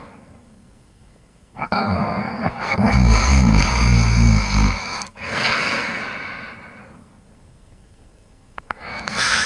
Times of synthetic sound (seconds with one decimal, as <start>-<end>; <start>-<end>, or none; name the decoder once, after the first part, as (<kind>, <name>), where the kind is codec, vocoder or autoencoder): 0.0-6.0 (codec, SNAC); 6.8-9.5